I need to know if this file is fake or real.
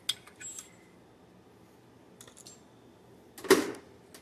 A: real